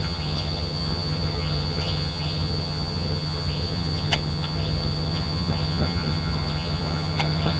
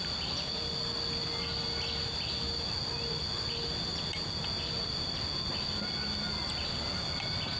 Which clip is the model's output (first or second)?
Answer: first